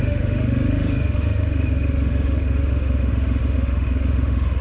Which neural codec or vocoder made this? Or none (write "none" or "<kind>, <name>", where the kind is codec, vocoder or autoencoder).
autoencoder, DAC-VAE